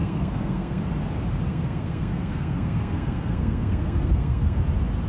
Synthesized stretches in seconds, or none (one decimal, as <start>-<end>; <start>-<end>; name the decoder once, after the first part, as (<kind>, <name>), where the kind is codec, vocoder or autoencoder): 0.0-0.8 (codec, SNAC); 1.5-4.6